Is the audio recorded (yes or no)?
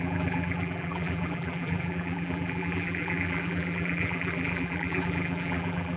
no